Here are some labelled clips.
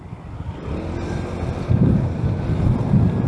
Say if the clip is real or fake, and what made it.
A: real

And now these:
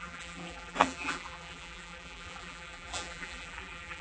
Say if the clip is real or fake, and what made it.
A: fake, vocoder, BigVGAN v2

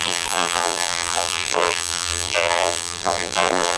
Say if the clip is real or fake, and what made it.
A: fake, vocoder, BigVGAN v2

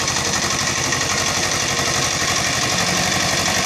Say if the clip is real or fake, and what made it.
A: fake, vocoder, BigVGAN v2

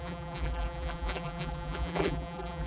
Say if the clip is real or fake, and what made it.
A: fake, vocoder, BigVGAN v2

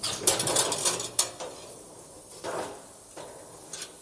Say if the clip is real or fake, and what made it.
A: fake, vocoder, BigVGAN v2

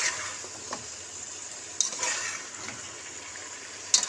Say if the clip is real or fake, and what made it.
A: real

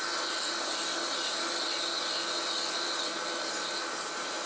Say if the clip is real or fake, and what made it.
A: real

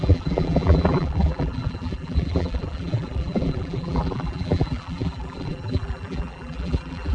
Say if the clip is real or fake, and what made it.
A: fake, vocoder, BigVGAN v2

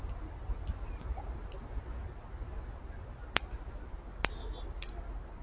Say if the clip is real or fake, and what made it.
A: real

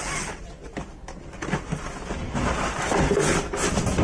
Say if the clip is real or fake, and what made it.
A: real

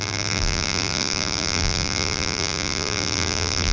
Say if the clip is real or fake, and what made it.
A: fake, vocoder, BigVGAN v2